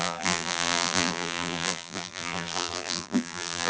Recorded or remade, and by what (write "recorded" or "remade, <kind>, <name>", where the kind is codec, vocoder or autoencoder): remade, vocoder, BigVGAN v2